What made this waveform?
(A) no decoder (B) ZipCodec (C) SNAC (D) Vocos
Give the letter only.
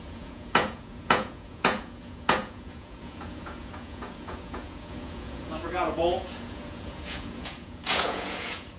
D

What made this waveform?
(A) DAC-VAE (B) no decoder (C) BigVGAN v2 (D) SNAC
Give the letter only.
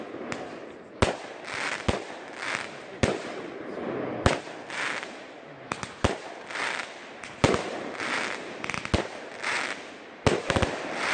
B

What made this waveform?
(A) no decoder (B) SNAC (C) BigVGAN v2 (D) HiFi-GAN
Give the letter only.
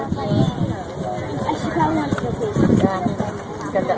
A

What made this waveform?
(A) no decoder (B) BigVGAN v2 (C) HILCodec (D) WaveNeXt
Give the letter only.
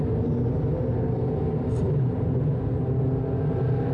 A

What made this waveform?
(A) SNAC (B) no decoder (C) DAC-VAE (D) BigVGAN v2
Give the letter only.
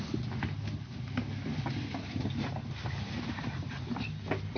B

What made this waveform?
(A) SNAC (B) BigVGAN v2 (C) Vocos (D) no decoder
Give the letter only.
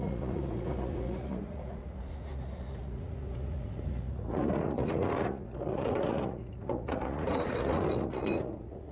C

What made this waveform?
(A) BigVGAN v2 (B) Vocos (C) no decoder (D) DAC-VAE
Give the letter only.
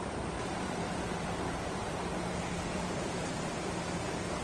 A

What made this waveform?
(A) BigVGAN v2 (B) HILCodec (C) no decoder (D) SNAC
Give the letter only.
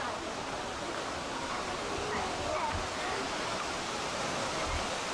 C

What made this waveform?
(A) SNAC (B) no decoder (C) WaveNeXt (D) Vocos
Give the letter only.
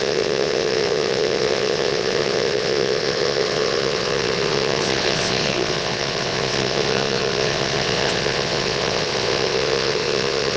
C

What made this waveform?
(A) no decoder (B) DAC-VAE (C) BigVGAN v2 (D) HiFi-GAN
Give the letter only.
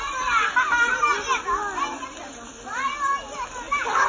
A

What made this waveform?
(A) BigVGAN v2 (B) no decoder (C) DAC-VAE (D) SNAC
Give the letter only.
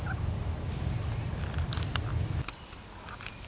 A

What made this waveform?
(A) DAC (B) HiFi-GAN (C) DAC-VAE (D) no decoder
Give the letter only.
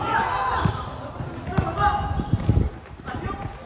D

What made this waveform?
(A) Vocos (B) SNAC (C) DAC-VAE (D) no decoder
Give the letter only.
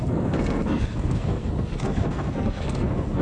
B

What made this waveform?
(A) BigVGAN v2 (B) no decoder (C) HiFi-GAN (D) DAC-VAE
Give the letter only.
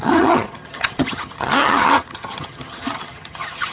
C